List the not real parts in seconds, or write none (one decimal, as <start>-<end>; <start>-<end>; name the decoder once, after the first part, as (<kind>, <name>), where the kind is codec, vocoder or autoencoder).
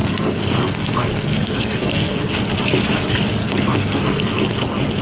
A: 0.0-2.3 (codec, SNAC); 3.4-4.3